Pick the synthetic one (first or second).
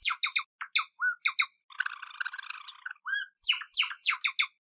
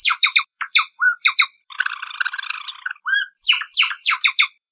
second